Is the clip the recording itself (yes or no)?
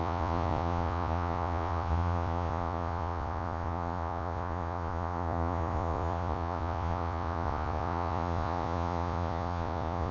no